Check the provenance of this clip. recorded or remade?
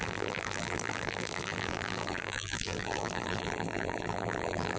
remade